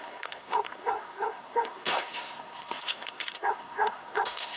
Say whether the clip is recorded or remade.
remade